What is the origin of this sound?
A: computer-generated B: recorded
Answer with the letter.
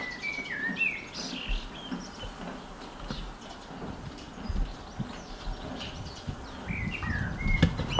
B